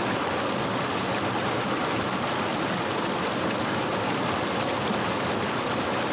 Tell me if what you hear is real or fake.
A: real